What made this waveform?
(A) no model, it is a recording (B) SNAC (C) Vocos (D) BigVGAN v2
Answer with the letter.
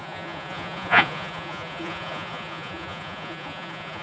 C